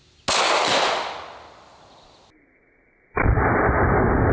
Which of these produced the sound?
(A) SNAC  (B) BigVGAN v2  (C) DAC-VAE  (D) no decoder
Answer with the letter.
D